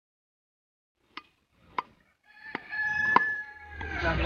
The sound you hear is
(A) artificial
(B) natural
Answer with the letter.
A